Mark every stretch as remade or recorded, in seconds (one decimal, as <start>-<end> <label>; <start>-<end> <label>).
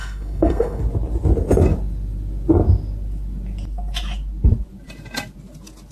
0.0-0.8 remade; 0.8-5.9 recorded